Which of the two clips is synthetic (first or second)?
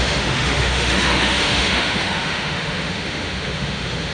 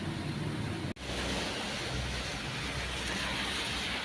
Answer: first